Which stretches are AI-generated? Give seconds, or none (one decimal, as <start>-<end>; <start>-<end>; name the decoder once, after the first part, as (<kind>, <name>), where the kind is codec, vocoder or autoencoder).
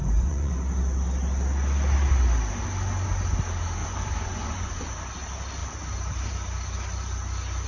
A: 0.0-0.5 (vocoder, Vocos); 3.8-5.1